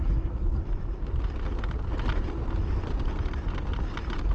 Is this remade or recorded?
recorded